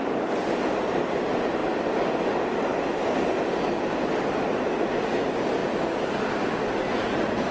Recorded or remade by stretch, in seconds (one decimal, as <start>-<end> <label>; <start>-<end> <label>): 0.0-7.5 recorded